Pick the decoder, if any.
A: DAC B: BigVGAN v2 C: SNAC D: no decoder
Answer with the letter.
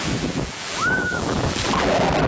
B